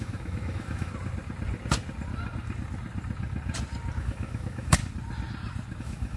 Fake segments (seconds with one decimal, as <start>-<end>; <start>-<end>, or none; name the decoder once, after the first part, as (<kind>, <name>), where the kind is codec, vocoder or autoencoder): 0.0-0.9 (autoencoder, DAC-VAE); 4.0-4.8; 5.8-6.2